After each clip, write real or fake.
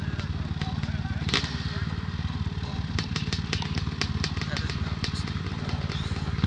real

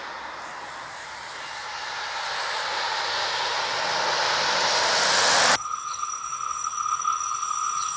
real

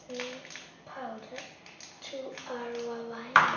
real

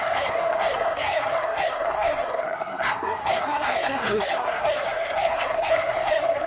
fake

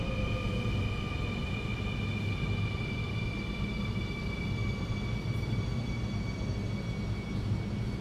real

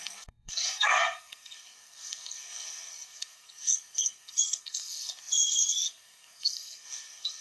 fake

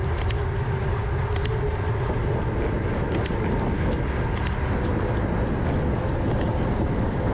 real